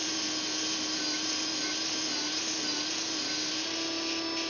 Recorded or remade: recorded